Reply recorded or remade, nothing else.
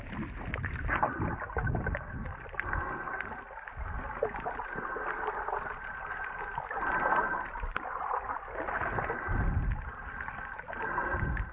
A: recorded